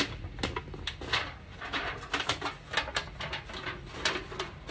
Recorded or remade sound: recorded